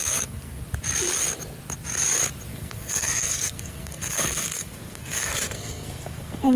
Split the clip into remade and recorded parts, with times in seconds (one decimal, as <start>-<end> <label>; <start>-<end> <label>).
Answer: 0.0-0.6 remade; 0.6-2.5 recorded; 2.5-6.6 remade